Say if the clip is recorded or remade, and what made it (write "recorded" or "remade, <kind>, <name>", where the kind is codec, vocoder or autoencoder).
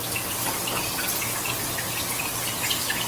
recorded